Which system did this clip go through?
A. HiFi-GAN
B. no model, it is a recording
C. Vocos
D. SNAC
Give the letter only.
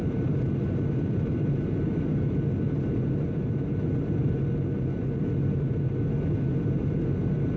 B